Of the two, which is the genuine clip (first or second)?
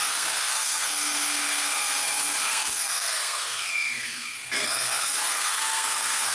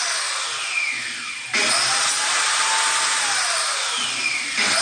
second